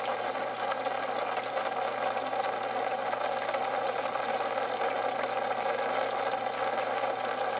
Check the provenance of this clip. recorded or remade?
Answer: recorded